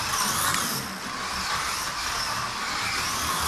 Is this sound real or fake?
real